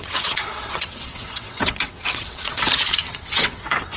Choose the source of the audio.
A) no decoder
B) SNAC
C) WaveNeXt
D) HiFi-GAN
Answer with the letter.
C